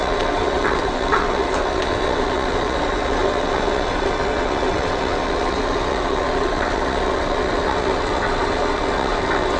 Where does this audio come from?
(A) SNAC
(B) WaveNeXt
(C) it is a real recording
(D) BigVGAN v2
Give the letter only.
B